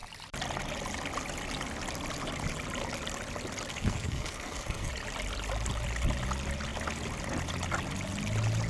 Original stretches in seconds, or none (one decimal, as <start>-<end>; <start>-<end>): 0.0-3.7; 4.9-8.7